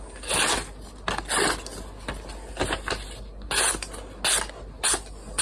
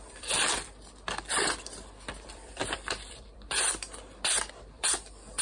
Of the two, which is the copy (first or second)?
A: second